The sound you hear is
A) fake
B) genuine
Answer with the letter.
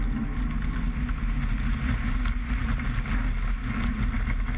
B